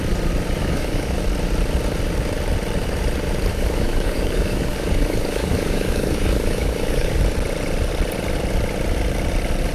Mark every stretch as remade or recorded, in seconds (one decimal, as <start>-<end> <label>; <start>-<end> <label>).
0.0-0.6 recorded; 0.6-1.2 remade; 1.2-3.5 recorded; 3.5-7.2 remade; 7.2-9.7 recorded